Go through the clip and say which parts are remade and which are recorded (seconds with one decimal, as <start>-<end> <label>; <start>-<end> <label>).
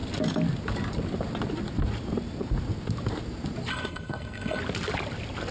0.0-3.7 recorded; 3.7-4.6 remade; 4.6-5.5 recorded